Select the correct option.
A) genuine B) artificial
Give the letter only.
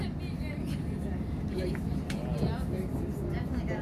A